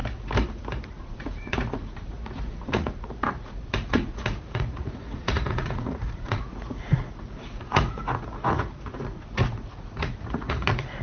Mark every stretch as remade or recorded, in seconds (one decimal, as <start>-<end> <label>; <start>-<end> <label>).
0.0-0.9 recorded; 0.9-11.0 remade